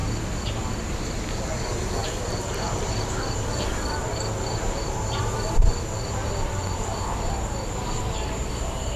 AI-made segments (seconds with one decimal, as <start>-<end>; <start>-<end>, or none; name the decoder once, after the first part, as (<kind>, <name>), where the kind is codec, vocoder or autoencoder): 1.3-9.0 (vocoder, BigVGAN v2)